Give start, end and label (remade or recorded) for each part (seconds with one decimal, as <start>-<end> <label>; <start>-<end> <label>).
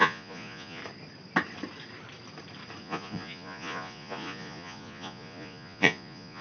0.0-0.8 remade; 0.8-2.8 recorded; 2.8-6.4 remade